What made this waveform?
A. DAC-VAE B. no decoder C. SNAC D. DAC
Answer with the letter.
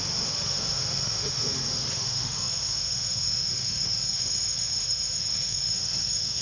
A